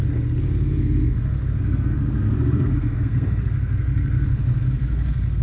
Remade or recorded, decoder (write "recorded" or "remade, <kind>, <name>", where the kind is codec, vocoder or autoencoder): remade, codec, SNAC